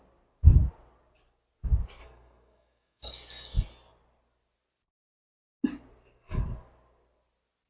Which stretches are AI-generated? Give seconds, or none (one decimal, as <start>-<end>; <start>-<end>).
2.0-3.1